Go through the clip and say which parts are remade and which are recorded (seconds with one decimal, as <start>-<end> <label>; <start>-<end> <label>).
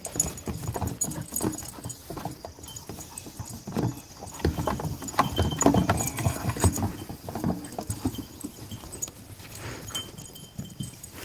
0.0-6.1 recorded; 6.1-6.7 remade; 6.7-11.2 recorded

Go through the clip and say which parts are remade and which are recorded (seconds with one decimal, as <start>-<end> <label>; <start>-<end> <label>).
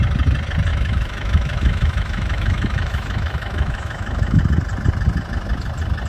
0.0-0.7 recorded; 0.7-4.4 remade; 4.4-6.1 recorded